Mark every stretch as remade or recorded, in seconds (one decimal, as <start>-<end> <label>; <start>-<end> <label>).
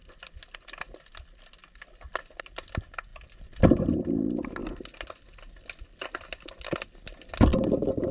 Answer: 0.0-8.1 recorded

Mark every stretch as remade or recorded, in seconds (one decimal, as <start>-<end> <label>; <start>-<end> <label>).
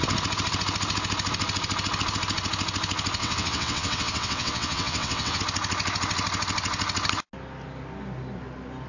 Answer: 0.0-3.2 recorded; 3.2-5.4 remade; 5.4-8.9 recorded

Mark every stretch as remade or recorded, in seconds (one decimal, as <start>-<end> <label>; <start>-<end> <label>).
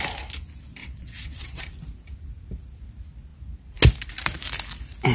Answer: 0.0-0.8 recorded; 0.8-1.6 remade; 1.6-5.1 recorded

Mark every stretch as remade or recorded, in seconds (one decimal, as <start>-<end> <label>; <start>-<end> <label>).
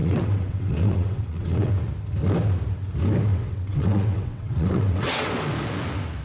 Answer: 0.0-1.7 remade; 1.7-3.3 recorded; 3.3-5.3 remade; 5.3-6.2 recorded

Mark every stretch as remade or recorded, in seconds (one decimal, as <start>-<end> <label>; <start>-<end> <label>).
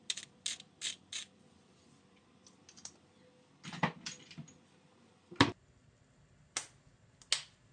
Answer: 0.0-7.7 recorded